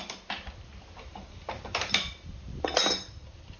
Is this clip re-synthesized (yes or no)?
no